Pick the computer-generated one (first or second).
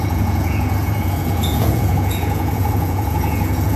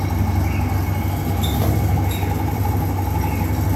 first